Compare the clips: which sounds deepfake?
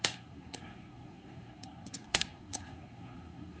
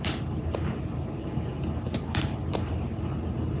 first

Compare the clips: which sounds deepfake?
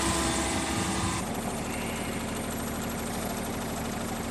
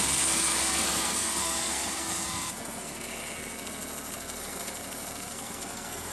second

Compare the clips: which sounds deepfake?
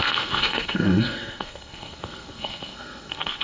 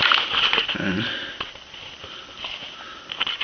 first